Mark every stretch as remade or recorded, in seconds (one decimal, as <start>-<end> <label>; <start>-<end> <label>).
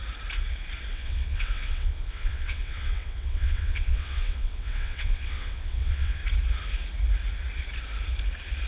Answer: 0.0-0.9 recorded; 0.9-6.2 remade; 6.2-8.7 recorded